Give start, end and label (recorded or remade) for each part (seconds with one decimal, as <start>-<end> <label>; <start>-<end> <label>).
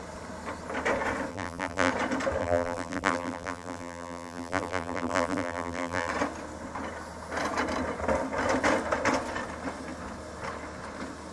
0.0-1.3 recorded; 1.3-1.9 remade; 1.9-2.4 recorded; 2.4-6.1 remade; 6.1-11.3 recorded